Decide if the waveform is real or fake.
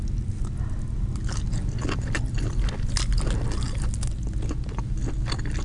real